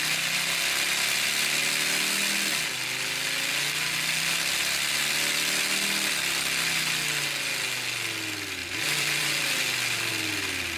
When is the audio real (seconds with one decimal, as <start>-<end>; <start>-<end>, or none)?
0.0-8.6; 10.1-10.8